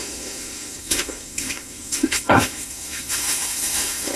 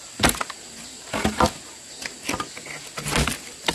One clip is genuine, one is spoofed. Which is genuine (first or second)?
second